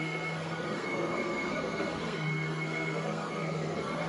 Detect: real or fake fake